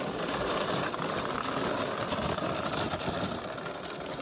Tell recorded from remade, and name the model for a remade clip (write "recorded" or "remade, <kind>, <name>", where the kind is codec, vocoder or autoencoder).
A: recorded